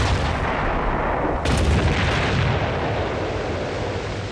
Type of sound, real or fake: real